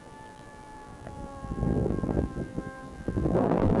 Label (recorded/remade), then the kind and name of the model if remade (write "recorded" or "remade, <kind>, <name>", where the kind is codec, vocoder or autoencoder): remade, vocoder, BigVGAN v2